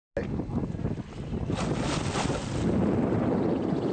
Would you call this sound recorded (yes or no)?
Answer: yes